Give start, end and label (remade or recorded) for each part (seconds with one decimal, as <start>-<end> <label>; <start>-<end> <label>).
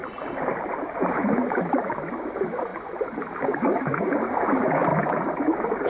0.0-1.1 recorded; 1.1-5.9 remade